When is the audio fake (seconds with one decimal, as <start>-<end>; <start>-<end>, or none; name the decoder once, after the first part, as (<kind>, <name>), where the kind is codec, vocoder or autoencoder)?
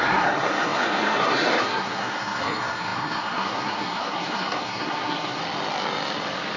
0.0-5.4 (codec, SNAC)